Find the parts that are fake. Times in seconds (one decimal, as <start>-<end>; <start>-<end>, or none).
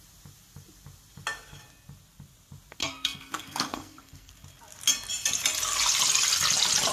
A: 2.8-4.3